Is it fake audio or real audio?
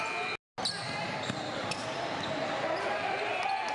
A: real